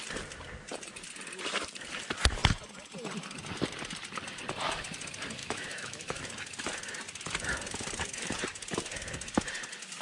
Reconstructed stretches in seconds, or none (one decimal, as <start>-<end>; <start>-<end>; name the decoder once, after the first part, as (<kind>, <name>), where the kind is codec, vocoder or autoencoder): 5.4-6.2 (autoencoder, DAC-VAE)